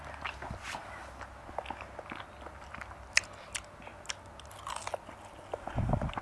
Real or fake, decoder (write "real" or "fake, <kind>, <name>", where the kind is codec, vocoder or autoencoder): real